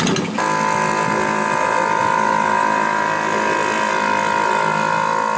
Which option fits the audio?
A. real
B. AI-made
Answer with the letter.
A